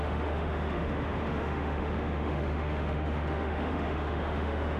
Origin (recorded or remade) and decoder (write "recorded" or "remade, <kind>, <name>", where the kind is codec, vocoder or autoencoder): remade, autoencoder, DAC-VAE